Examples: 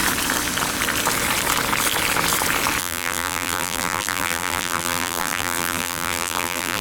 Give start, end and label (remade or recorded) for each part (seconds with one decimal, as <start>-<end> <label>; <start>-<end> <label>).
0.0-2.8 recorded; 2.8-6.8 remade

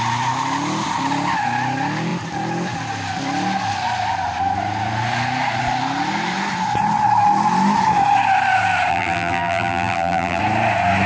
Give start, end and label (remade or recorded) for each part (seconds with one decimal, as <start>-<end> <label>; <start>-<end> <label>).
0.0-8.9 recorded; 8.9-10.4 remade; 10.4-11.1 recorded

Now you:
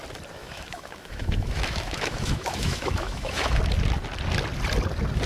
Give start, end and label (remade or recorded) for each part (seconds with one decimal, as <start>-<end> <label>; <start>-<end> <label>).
0.0-0.4 recorded; 0.4-3.6 remade; 3.6-5.3 recorded

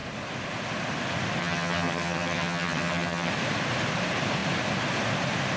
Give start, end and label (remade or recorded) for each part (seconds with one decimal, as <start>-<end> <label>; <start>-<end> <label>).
0.0-1.4 recorded; 1.4-3.3 remade; 3.3-5.6 recorded